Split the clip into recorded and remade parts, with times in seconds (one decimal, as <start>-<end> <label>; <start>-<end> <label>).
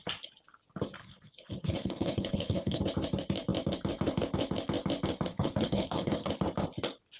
0.0-1.0 recorded; 1.0-2.8 remade; 2.8-5.3 recorded; 5.3-6.3 remade; 6.3-7.2 recorded